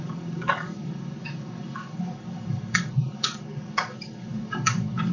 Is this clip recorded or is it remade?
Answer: remade